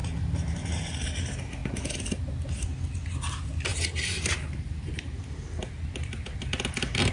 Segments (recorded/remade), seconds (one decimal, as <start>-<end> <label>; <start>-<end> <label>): 0.0-1.2 remade; 1.2-3.7 recorded; 3.7-4.9 remade; 4.9-7.1 recorded